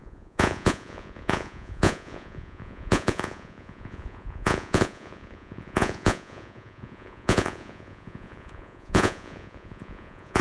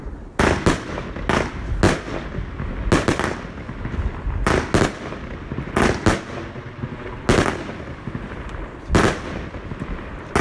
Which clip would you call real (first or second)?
second